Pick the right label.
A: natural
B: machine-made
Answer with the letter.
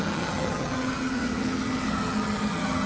B